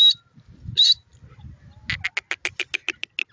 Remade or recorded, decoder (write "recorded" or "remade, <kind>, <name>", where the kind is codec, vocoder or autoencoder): recorded